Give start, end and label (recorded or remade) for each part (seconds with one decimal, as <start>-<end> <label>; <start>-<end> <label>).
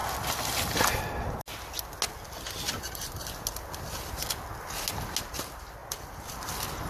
0.0-5.8 recorded; 5.8-6.5 remade; 6.5-6.9 recorded